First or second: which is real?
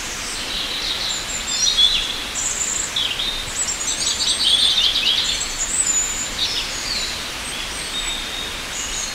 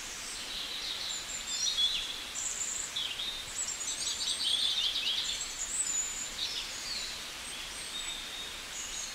first